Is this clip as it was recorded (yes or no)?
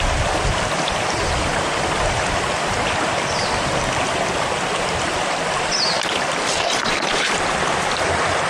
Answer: no